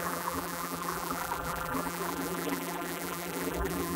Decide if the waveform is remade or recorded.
remade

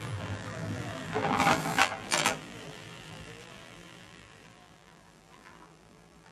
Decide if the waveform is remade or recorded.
remade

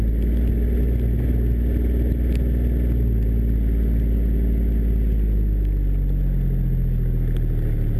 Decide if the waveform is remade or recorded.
recorded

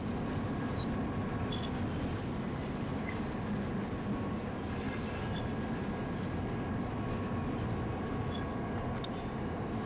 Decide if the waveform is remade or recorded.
recorded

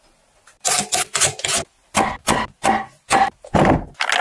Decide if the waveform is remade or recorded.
recorded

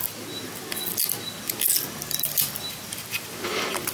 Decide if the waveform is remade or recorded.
recorded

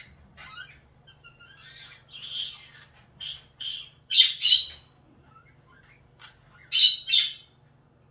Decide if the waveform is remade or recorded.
recorded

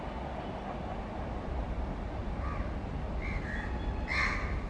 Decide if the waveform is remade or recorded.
recorded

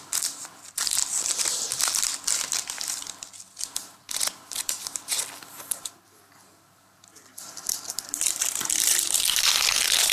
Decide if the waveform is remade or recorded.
remade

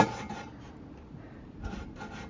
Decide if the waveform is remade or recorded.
recorded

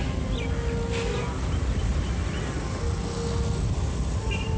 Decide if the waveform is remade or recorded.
recorded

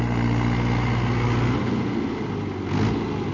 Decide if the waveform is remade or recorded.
recorded